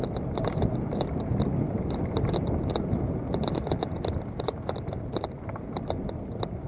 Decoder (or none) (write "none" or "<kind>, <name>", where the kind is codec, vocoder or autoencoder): none